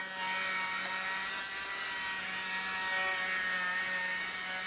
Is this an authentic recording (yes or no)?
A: yes